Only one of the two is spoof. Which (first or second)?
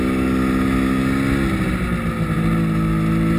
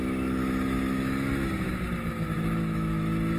second